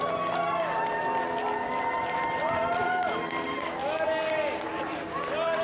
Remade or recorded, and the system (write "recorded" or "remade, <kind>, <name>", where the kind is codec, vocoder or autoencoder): recorded